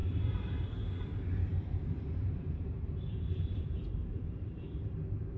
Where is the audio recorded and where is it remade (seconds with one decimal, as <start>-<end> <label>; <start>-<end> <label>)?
0.0-0.7 remade; 0.7-1.5 recorded; 1.5-4.7 remade; 4.7-5.4 recorded